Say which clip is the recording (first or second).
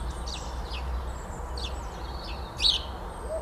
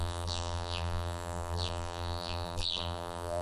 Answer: first